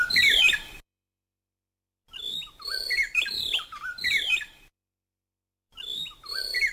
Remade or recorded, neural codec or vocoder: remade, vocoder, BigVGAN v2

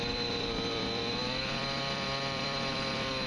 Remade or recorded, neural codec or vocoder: remade, vocoder, BigVGAN v2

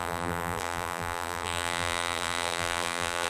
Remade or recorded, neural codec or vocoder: remade, vocoder, BigVGAN v2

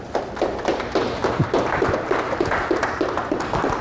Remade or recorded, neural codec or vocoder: recorded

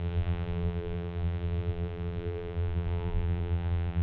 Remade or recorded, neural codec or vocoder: remade, vocoder, BigVGAN v2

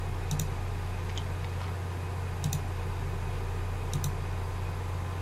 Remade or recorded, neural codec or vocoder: recorded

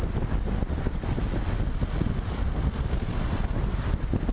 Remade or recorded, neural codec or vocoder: recorded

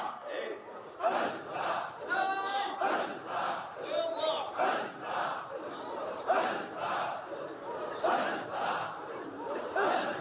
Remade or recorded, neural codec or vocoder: remade, vocoder, BigVGAN v2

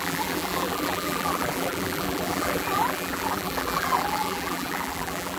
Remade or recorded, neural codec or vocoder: remade, vocoder, BigVGAN v2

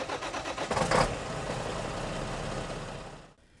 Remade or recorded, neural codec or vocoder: recorded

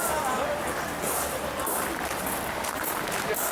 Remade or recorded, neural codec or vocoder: recorded